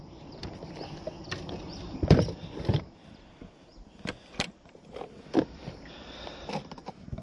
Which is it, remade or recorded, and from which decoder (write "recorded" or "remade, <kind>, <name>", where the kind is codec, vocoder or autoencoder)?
recorded